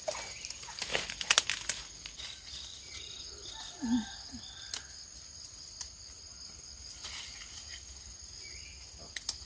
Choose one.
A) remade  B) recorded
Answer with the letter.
B